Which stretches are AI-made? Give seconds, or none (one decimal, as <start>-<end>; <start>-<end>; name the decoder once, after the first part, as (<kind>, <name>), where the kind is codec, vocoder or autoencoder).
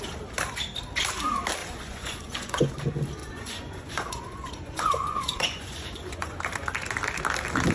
1.6-2.7 (vocoder, Vocos); 3.2-6.4